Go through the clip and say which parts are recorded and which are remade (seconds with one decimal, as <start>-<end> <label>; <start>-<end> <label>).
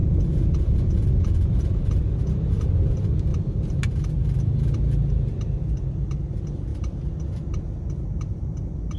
0.0-1.7 remade; 1.7-9.0 recorded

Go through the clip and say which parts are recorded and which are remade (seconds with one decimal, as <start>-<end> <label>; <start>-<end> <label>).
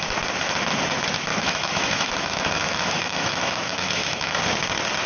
0.0-1.3 recorded; 1.3-4.4 remade; 4.4-5.1 recorded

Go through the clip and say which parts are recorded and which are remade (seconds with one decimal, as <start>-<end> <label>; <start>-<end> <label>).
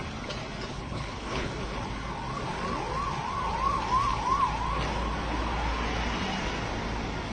0.0-0.7 recorded; 0.7-1.5 remade; 1.5-7.3 recorded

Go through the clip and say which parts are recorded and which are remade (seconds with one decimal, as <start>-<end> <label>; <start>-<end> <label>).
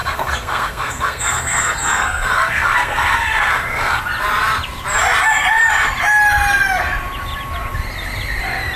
0.0-4.0 remade; 4.0-8.8 recorded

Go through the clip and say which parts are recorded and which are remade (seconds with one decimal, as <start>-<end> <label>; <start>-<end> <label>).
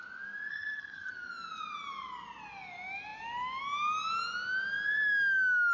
0.0-0.5 recorded; 0.5-1.1 remade; 1.1-5.7 recorded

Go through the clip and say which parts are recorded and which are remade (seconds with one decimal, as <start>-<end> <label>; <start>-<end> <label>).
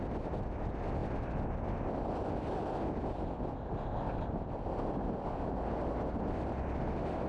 0.0-7.3 recorded